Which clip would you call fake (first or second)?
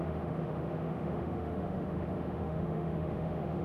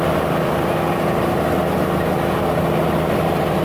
first